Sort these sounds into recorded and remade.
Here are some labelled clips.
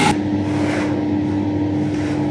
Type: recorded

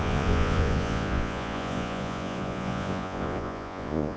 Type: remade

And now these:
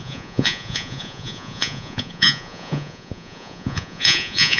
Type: remade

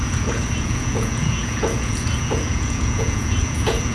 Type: remade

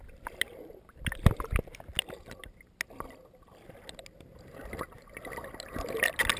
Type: recorded